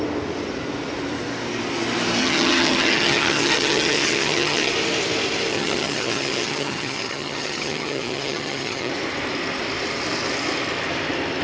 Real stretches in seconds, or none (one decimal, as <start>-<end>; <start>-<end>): 0.0-2.2; 4.7-5.5; 8.9-11.4